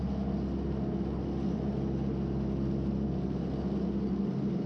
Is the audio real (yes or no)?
yes